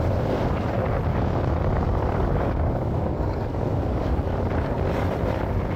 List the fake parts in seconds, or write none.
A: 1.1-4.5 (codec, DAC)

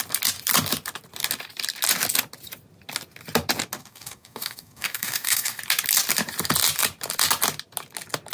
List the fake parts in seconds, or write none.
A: 3.8-5.6 (codec, DAC)

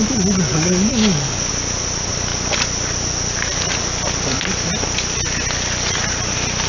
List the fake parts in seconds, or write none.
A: 0.5-1.5 (codec, DAC)

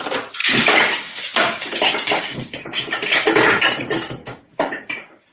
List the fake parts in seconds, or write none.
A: 0.4-3.6 (codec, DAC); 4.2-5.3

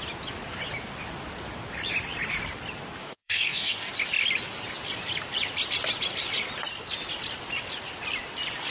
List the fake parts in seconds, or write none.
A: 3.0-3.9 (codec, DAC)